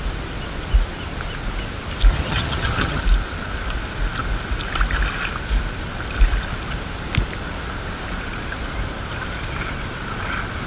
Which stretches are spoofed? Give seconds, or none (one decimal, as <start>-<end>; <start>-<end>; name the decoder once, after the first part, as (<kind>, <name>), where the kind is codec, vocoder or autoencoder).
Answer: 2.1-3.0 (vocoder, HiFi-GAN)